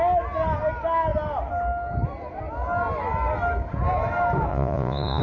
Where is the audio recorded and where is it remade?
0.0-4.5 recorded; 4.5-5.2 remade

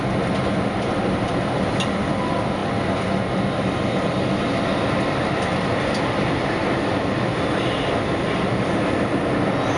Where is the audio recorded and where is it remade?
0.0-9.8 recorded

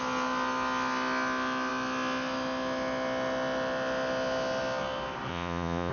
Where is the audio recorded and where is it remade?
0.0-5.3 recorded; 5.3-5.9 remade

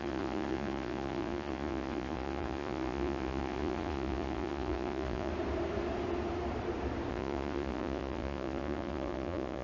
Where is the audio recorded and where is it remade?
0.0-5.3 remade; 5.3-7.1 recorded; 7.1-9.6 remade